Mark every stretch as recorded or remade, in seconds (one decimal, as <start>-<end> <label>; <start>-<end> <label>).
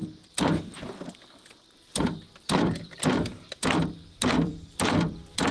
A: 0.0-0.6 recorded; 0.6-5.5 remade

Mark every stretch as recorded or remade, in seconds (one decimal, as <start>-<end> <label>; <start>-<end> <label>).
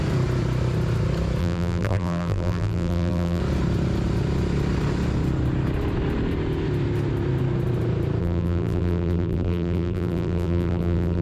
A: 0.0-1.4 recorded; 1.4-3.4 remade; 3.4-8.2 recorded; 8.2-11.2 remade